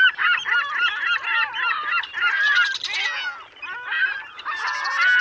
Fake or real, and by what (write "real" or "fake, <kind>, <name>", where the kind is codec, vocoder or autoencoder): real